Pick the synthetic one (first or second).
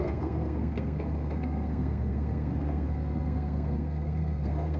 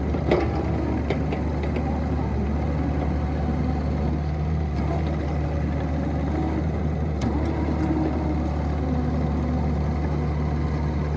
first